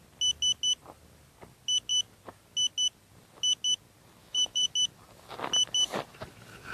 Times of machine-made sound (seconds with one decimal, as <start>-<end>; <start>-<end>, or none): 4.2-4.7